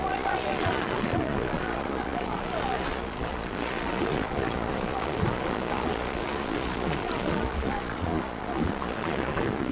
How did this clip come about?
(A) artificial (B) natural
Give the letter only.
A